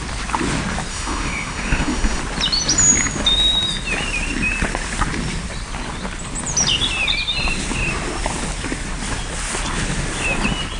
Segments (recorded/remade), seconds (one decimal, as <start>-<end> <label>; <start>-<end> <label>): 0.0-0.9 recorded; 0.9-2.2 remade; 2.2-10.8 recorded